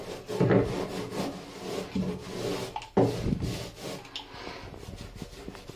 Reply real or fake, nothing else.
real